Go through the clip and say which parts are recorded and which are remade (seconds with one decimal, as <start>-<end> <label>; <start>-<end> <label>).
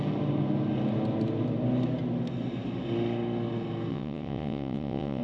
0.0-3.9 recorded; 3.9-5.2 remade